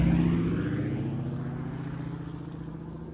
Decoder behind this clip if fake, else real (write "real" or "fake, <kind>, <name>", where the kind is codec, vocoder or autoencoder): real